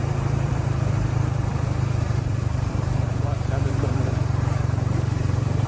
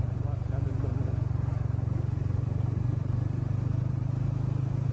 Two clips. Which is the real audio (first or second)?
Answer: second